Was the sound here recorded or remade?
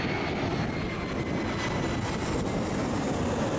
recorded